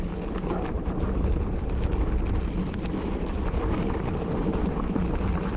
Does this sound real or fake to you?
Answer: real